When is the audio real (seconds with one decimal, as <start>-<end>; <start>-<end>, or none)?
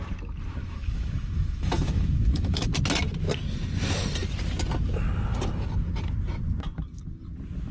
0.0-0.6; 2.7-7.7